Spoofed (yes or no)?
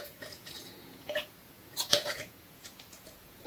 yes